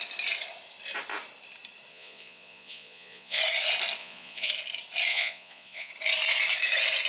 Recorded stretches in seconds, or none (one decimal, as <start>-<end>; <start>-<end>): 0.0-1.9; 3.4-4.0; 4.5-5.1; 5.9-7.1